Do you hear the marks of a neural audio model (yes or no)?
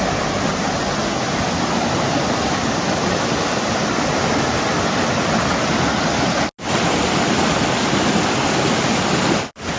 no